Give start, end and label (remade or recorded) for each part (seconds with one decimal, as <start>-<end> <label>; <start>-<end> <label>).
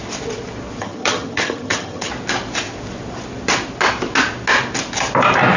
0.0-0.8 recorded; 0.8-2.1 remade; 2.1-5.6 recorded